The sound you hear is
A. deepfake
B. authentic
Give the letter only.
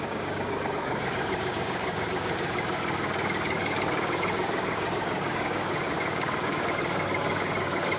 A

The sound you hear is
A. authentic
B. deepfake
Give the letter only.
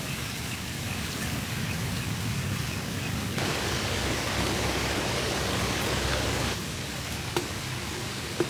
B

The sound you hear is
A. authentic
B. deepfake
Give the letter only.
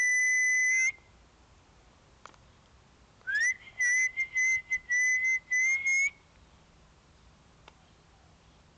A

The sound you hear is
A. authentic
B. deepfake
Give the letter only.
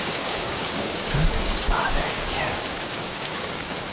B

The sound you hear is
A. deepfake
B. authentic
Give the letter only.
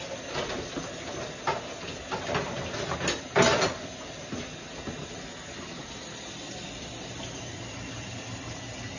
B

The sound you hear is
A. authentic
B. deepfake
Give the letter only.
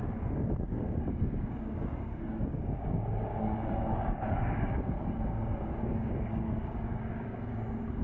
B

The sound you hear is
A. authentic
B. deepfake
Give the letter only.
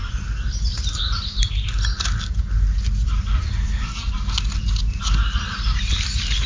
A